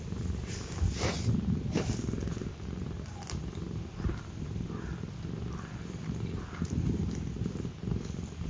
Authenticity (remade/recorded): recorded